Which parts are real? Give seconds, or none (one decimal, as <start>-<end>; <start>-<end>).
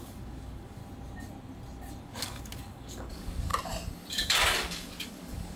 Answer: 0.8-2.0; 3.5-4.1